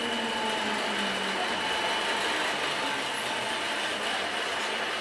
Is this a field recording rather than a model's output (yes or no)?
yes